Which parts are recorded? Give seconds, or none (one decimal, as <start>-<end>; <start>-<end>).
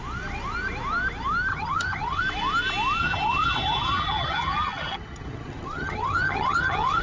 0.0-1.5; 2.2-3.0